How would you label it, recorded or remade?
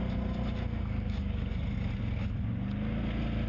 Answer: recorded